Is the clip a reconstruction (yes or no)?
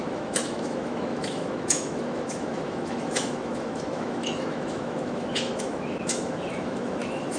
yes